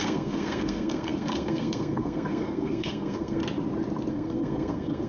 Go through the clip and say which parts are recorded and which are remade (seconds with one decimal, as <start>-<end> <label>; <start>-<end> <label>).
0.0-3.4 remade; 3.4-4.1 recorded; 4.1-5.1 remade

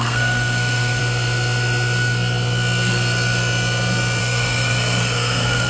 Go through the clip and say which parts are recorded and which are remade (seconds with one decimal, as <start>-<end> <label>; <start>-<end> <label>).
0.0-1.0 remade; 1.0-4.2 recorded; 4.2-5.7 remade

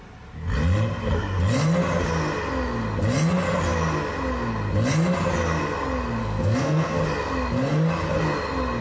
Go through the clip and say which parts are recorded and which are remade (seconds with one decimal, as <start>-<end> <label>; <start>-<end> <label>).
0.0-6.2 recorded; 6.2-7.0 remade; 7.0-8.8 recorded